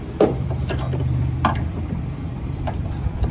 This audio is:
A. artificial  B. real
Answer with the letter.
A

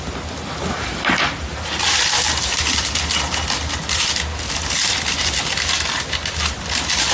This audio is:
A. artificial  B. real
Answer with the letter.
B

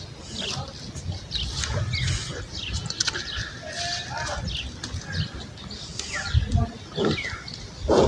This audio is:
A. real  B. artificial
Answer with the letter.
A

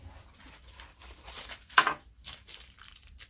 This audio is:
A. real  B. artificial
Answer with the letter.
B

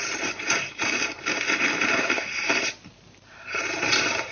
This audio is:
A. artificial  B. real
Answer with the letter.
A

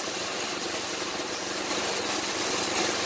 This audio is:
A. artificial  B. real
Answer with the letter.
B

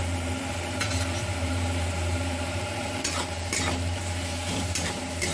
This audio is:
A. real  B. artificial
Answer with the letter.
B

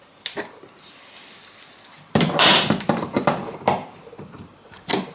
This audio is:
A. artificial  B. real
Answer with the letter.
A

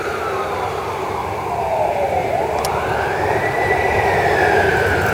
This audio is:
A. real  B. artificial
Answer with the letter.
B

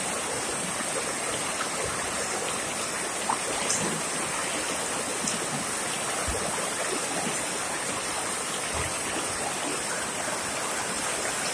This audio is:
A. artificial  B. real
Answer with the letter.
B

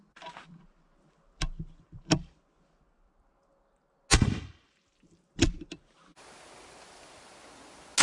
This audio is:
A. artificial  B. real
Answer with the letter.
B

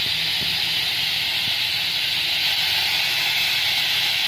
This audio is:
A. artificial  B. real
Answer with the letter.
B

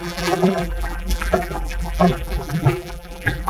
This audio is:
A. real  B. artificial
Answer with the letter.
B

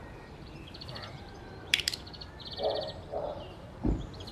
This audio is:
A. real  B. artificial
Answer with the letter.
B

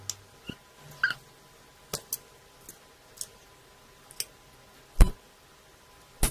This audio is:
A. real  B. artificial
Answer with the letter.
A